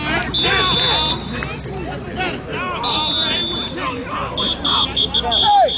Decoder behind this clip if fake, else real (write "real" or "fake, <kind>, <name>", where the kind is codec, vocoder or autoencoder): real